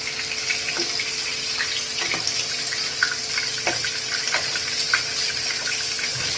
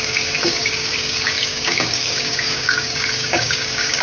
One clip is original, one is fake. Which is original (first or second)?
first